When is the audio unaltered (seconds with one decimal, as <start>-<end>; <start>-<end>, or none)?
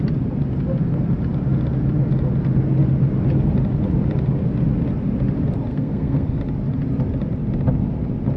0.0-5.7; 6.4-8.4